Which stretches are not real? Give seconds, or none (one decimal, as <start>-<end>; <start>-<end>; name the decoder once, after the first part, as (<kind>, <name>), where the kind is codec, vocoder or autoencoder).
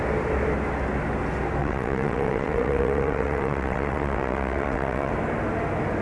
1.6-5.1 (vocoder, WaveNeXt)